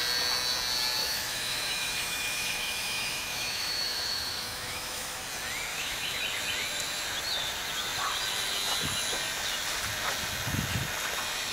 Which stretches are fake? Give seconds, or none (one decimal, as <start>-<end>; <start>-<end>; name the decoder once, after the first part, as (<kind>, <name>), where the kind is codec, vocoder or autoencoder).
1.0-5.2 (autoencoder, DAC-VAE); 5.7-6.2